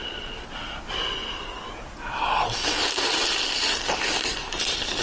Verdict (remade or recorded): recorded